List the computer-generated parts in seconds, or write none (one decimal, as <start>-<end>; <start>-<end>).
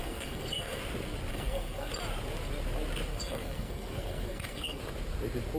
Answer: 0.0-0.8; 1.3-1.9; 3.1-4.8